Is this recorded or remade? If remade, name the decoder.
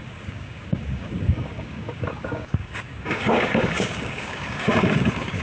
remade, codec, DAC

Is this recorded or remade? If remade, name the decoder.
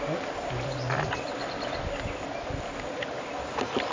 recorded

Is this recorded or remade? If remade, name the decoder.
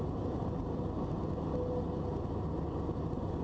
recorded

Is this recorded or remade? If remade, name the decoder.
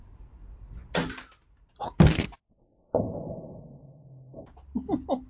recorded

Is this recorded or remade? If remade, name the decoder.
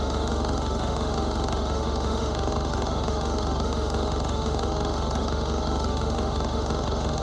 remade, autoencoder, DAC-VAE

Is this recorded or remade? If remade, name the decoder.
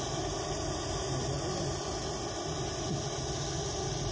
recorded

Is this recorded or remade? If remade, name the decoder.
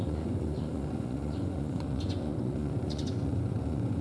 remade, vocoder, Vocos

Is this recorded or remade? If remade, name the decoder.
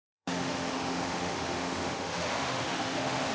remade, autoencoder, DAC-VAE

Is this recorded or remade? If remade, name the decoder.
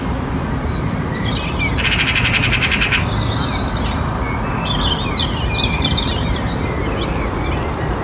recorded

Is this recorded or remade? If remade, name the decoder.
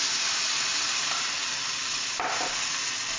recorded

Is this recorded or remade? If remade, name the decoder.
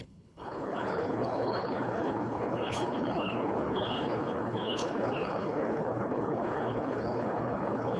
remade, codec, HILCodec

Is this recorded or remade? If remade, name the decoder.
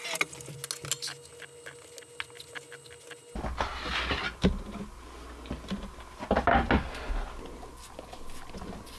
recorded